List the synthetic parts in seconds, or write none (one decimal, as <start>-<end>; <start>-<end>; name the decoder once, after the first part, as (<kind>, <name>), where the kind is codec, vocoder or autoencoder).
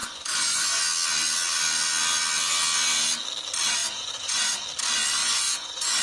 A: 0.0-0.8 (vocoder, Vocos); 3.8-4.6; 5.2-6.0